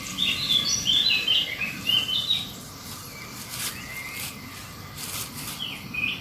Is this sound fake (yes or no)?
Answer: no